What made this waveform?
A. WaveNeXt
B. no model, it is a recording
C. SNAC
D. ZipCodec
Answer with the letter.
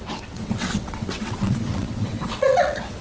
A